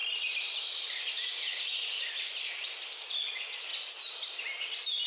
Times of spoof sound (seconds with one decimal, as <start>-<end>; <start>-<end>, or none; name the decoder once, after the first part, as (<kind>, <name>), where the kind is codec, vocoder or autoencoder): none